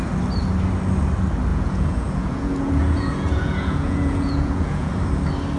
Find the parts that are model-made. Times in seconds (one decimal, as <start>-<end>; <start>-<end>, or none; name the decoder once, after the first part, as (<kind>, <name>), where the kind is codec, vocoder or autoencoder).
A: 1.5-4.9 (vocoder, Vocos)